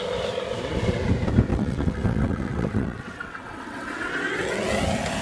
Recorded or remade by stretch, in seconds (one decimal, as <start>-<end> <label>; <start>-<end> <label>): 0.0-1.5 recorded; 1.5-4.6 remade; 4.6-5.2 recorded